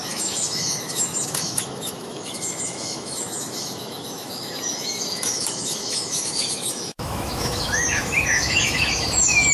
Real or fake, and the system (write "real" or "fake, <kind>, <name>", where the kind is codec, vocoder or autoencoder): fake, autoencoder, DAC-VAE